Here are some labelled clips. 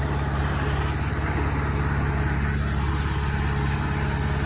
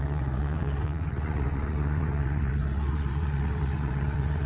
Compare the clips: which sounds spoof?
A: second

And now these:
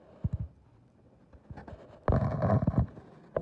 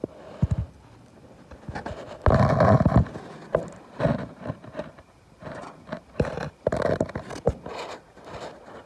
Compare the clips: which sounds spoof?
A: second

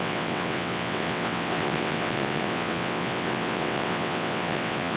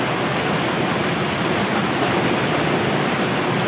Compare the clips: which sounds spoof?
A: first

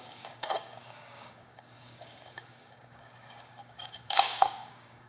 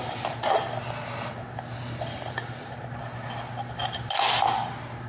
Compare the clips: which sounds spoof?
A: first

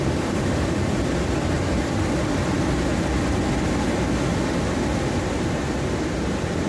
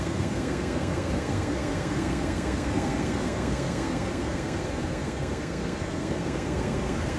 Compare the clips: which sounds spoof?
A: second